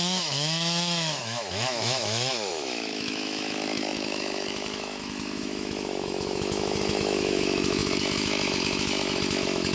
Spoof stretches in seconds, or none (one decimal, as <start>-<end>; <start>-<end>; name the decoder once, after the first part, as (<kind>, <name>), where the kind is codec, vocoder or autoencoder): 0.0-9.7 (autoencoder, DAC-VAE)